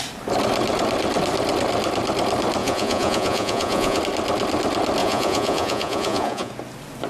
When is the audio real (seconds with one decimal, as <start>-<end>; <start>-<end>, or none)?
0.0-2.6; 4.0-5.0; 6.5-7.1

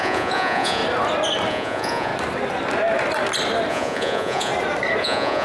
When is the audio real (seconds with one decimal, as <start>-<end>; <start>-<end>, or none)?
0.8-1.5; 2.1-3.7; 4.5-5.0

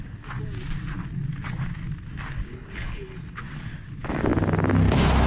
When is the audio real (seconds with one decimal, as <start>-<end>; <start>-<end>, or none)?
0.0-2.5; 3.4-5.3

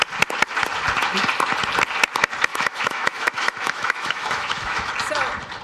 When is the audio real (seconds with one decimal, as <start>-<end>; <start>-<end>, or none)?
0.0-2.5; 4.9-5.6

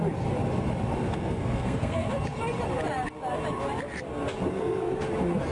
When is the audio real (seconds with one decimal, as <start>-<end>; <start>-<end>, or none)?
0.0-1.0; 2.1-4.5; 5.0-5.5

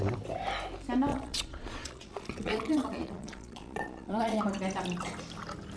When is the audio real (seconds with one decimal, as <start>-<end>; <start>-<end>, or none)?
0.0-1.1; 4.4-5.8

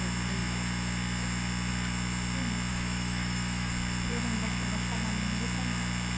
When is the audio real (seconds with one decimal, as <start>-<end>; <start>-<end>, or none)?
0.0-2.7; 3.7-6.2

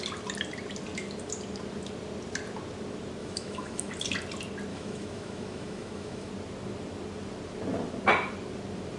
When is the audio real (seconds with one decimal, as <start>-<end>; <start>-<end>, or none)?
0.0-3.2; 3.9-4.7; 6.3-9.0